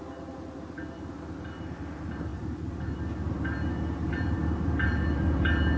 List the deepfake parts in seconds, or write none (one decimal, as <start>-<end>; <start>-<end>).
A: 2.3-2.9; 4.0-5.0